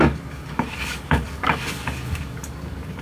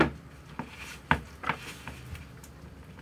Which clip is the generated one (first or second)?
first